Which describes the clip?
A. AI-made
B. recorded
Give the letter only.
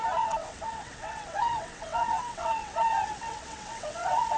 A